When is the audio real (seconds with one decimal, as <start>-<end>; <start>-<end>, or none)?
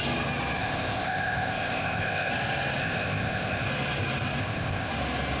0.0-0.6; 2.3-2.8; 3.6-4.4; 4.9-5.4